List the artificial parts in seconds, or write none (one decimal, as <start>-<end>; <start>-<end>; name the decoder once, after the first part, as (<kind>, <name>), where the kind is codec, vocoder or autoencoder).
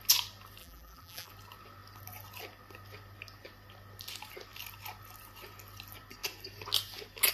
0.6-1.3 (vocoder, BigVGAN v2)